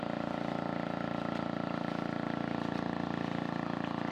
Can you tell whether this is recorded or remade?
recorded